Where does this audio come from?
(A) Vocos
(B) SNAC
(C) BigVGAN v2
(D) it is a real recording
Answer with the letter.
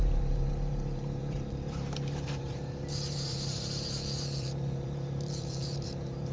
C